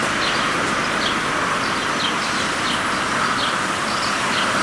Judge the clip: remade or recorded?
recorded